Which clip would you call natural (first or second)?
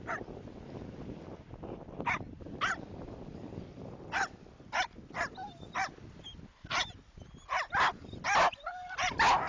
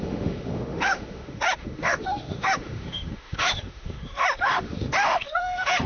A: first